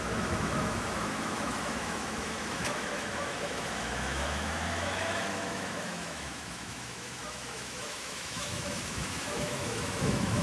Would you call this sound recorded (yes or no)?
no